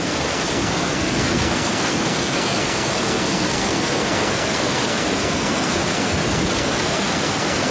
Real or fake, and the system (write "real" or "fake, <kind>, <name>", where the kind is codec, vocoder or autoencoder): fake, codec, SNAC